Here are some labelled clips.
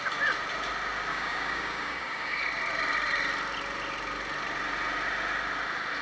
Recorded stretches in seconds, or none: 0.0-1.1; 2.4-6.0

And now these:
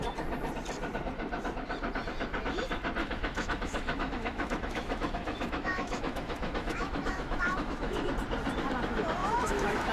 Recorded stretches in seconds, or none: 0.0-3.0; 8.1-9.2

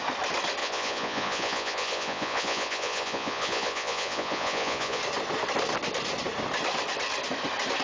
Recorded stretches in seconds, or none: 0.0-0.6; 5.0-7.8